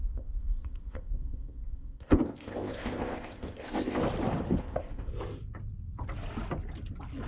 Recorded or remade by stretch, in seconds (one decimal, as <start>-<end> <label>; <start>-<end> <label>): 0.0-4.0 remade; 4.0-4.6 recorded; 4.6-5.1 remade; 5.1-7.3 recorded